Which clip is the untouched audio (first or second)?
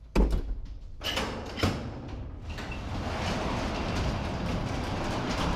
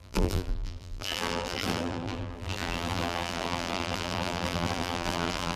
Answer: first